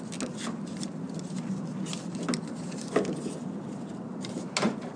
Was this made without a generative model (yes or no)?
yes